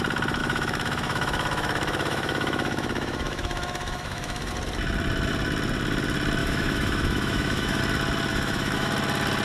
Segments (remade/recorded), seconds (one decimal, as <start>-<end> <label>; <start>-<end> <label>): 0.0-0.4 recorded; 0.4-4.5 remade; 4.5-6.4 recorded; 6.4-7.8 remade; 7.8-8.3 recorded; 8.3-8.9 remade; 8.9-9.4 recorded